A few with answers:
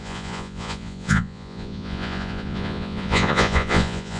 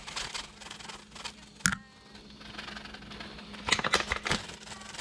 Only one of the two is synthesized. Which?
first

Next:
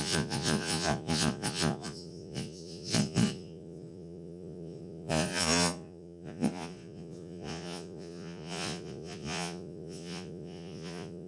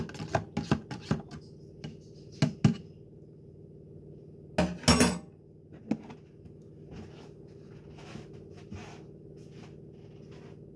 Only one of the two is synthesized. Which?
first